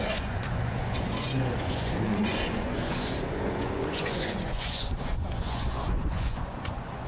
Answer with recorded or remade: remade